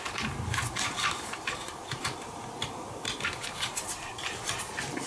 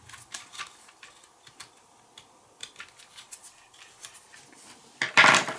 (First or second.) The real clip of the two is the second